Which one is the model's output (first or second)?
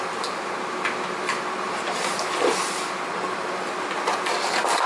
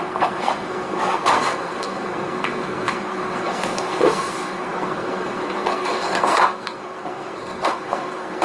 second